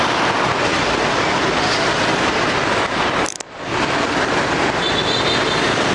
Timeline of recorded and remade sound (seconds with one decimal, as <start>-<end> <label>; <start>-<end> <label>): 0.0-5.9 recorded